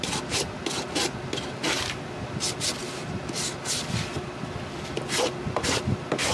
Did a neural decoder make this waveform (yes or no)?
no